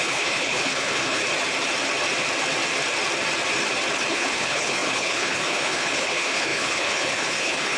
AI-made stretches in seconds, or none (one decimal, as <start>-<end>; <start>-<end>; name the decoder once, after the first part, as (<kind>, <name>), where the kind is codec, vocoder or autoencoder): 0.0-1.2 (codec, HILCodec); 4.1-7.8